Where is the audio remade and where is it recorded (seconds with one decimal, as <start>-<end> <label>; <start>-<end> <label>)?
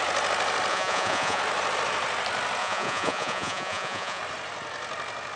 0.0-0.7 recorded; 0.7-1.4 remade; 1.4-2.6 recorded; 2.6-4.2 remade; 4.2-5.4 recorded